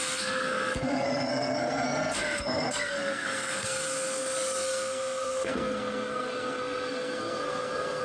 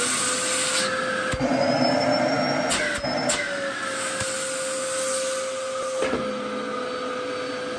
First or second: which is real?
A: second